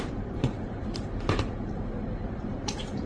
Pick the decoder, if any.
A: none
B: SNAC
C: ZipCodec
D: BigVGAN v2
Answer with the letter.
D